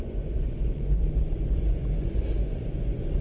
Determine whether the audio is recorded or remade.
remade